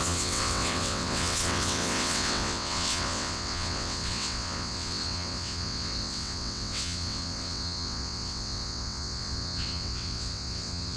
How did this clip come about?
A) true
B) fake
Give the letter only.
B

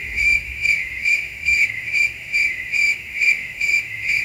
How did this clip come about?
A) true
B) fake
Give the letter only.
B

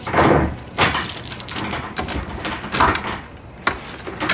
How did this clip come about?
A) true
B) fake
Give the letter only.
A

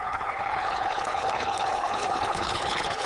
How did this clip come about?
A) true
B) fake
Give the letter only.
B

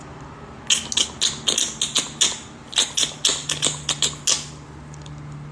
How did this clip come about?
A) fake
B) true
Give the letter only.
B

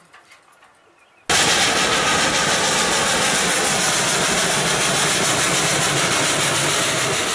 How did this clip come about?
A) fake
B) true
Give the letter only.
B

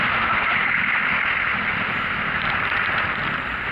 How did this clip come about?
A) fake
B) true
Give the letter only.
A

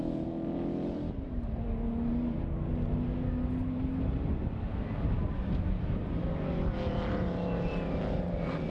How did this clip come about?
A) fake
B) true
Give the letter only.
B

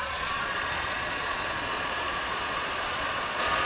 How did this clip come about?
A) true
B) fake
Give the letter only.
B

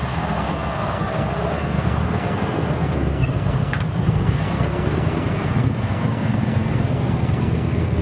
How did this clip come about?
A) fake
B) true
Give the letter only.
A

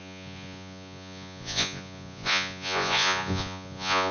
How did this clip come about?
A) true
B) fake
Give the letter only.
B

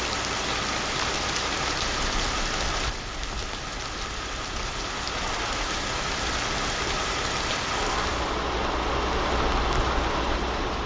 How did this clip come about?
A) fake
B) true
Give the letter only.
B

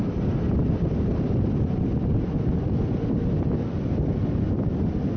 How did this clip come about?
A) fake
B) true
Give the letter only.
A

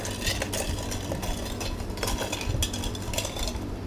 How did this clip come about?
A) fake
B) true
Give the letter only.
B